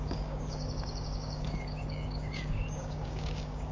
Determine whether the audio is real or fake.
fake